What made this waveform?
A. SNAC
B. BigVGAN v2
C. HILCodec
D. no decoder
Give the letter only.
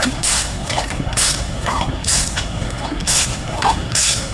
A